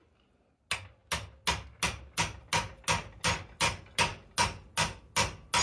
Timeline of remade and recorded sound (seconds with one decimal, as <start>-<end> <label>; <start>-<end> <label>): 0.0-5.6 recorded